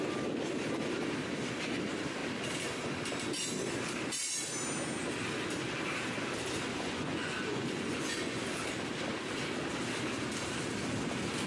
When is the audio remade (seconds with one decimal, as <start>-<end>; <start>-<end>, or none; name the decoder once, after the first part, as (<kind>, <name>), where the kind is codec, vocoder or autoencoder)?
6.7-8.4 (vocoder, Vocos)